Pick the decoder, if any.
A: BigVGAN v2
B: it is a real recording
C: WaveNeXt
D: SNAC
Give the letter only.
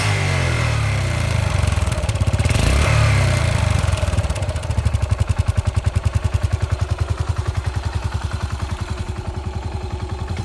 A